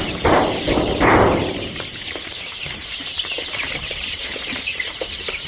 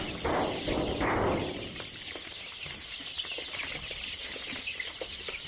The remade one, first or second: first